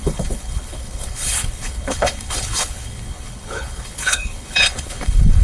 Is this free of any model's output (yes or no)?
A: no